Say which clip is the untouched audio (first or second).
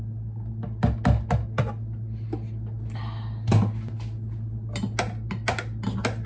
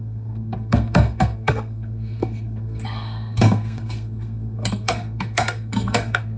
first